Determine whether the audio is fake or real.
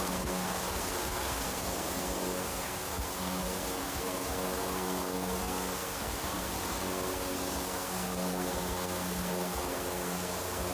fake